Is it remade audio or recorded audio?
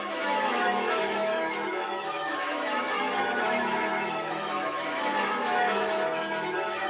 remade